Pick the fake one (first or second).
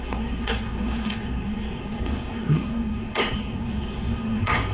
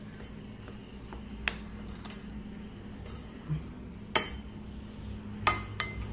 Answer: first